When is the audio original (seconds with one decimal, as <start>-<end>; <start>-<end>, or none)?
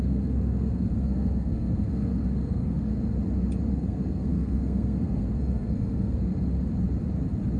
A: 2.9-3.7; 6.3-7.6